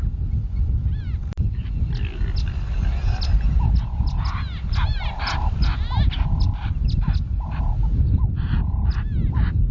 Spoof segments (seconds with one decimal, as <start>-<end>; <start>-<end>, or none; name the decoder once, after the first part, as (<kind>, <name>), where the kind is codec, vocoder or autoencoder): none